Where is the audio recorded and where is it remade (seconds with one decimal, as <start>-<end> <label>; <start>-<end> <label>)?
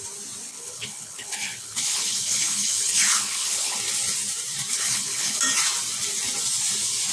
0.0-0.5 recorded; 0.5-3.8 remade; 3.8-4.7 recorded; 4.7-5.4 remade; 5.4-7.1 recorded